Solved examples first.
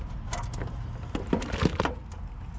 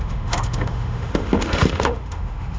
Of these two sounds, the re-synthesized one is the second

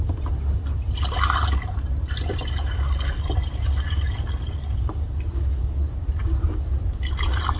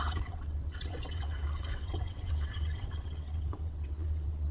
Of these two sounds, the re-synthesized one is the second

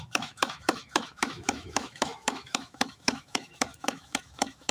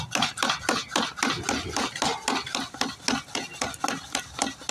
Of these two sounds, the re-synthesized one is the first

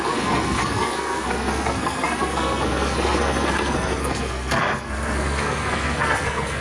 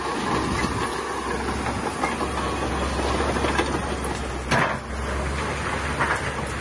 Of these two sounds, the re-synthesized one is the first